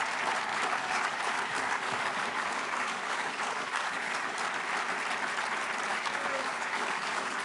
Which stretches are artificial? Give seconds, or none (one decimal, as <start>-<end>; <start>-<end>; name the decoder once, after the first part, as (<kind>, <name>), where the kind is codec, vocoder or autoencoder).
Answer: 0.5-4.4 (codec, DAC); 5.9-7.4